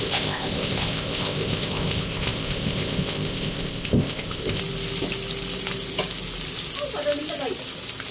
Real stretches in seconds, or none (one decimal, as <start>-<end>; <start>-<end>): 4.6-8.1